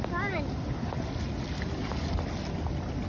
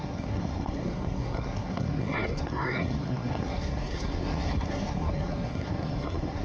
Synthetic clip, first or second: second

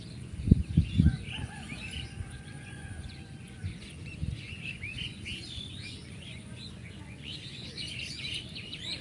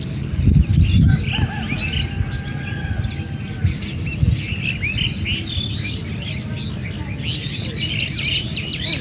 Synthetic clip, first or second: first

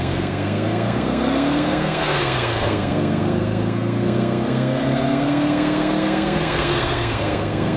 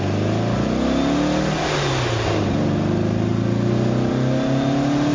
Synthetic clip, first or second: first